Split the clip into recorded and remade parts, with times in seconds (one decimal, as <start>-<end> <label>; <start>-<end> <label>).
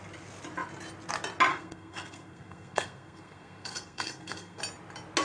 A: 0.0-1.5 recorded; 1.5-4.6 remade; 4.6-5.2 recorded